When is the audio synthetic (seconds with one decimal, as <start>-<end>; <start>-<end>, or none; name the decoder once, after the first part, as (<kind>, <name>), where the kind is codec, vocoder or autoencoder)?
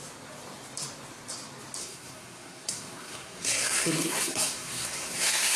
1.8-5.6 (codec, SNAC)